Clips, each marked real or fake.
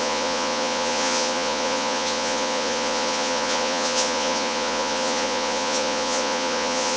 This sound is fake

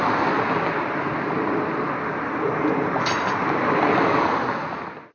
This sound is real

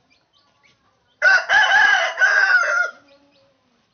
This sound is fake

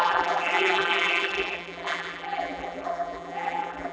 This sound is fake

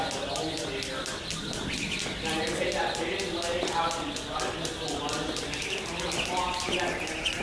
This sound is real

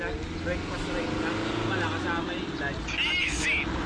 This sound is real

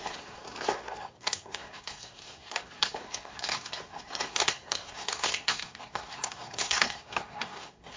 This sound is fake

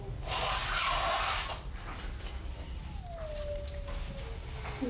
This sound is real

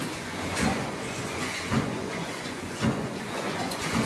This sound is fake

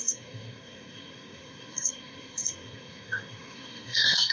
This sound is fake